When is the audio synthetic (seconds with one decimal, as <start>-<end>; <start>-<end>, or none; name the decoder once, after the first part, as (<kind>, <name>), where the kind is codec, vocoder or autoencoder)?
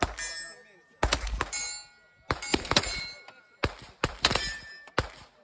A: 2.5-3.0 (vocoder, BigVGAN v2); 4.3-4.9